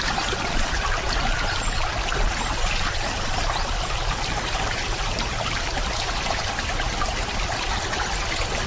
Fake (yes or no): no